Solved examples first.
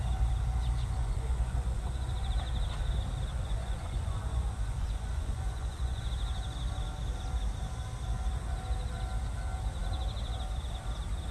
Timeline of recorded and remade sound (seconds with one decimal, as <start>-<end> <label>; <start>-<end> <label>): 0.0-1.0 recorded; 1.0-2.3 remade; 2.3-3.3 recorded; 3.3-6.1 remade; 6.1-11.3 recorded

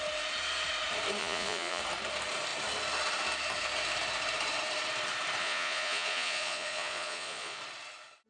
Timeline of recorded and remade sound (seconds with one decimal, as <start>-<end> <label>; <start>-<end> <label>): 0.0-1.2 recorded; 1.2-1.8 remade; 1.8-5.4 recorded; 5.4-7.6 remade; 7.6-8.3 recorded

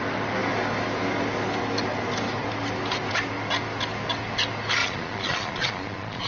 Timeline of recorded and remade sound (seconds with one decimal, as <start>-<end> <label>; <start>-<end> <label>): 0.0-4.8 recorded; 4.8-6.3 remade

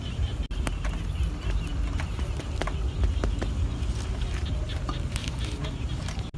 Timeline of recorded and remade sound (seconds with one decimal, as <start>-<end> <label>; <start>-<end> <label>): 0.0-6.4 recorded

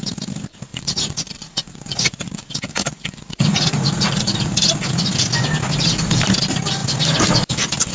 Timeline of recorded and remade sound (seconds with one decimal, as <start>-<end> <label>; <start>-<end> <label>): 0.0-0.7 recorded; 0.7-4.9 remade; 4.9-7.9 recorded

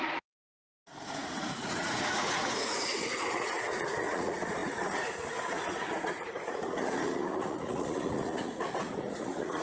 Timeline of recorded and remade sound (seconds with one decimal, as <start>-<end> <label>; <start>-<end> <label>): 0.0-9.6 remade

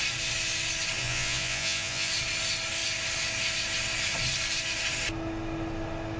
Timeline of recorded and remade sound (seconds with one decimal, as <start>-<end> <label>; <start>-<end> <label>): 0.0-1.0 recorded; 1.0-2.1 remade; 2.1-6.2 recorded